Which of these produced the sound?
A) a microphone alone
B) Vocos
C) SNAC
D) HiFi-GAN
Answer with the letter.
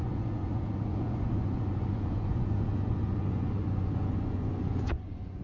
B